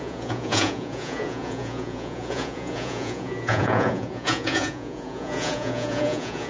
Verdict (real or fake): fake